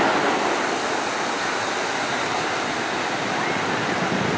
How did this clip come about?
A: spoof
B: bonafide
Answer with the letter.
B